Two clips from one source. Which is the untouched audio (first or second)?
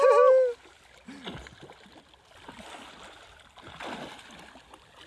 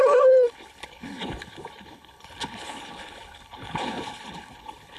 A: first